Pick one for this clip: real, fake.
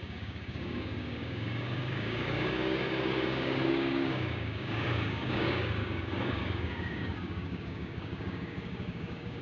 fake